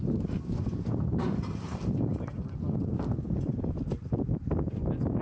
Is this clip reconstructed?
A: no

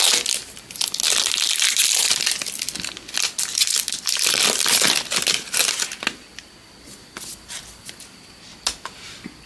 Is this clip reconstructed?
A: no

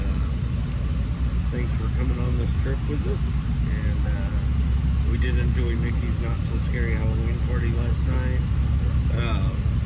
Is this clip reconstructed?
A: no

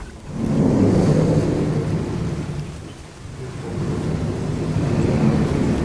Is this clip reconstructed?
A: no